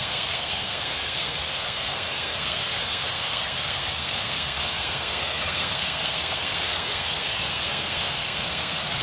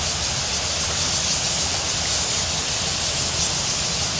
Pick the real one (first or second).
second